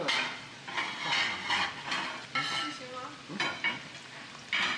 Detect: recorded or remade recorded